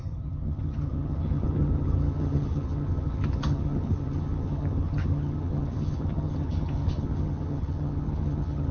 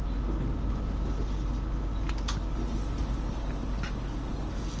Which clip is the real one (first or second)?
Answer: second